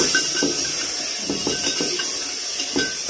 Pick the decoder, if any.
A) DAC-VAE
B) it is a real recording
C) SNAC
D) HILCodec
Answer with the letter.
B